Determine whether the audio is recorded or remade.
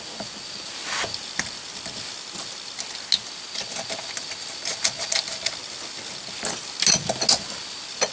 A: recorded